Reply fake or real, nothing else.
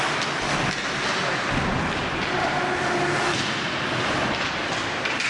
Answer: real